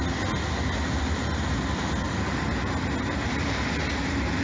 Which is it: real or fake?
real